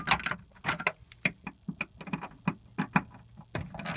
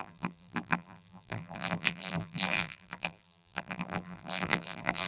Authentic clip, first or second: first